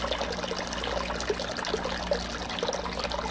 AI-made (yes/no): no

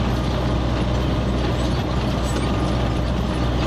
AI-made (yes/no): no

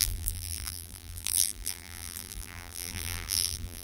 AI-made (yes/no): yes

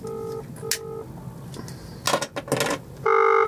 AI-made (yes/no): no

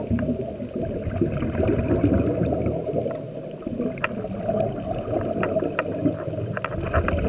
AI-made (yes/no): no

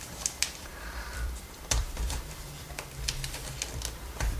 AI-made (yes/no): yes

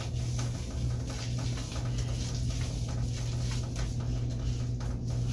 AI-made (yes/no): no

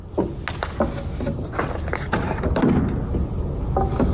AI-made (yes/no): no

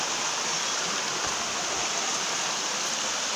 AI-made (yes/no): no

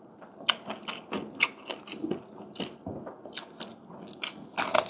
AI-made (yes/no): no